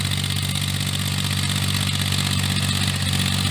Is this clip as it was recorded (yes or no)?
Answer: yes